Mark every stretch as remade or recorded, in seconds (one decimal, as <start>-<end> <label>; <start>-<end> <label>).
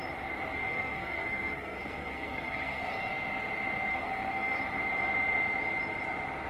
0.0-0.6 recorded; 0.6-3.1 remade; 3.1-3.9 recorded; 3.9-4.6 remade; 4.6-6.5 recorded